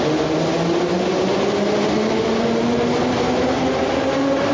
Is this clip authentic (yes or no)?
yes